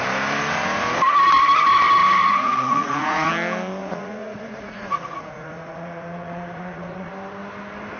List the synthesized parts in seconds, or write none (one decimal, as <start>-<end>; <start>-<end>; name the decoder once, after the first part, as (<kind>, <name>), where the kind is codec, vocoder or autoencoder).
2.2-3.3 (vocoder, Vocos); 3.8-7.1